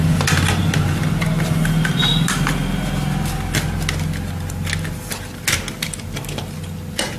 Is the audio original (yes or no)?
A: yes